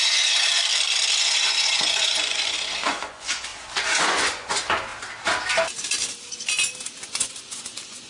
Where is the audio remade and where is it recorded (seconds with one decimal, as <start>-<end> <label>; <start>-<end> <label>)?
0.0-0.6 remade; 0.6-1.2 recorded; 1.2-4.9 remade; 4.9-7.0 recorded; 7.0-8.1 remade